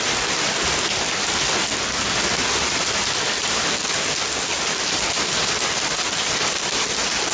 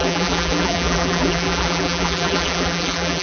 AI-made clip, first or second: second